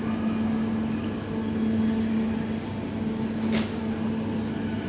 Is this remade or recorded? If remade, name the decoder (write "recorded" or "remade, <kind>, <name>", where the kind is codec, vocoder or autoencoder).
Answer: recorded